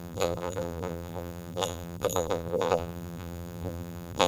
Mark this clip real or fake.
fake